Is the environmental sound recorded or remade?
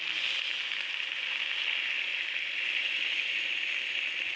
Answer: recorded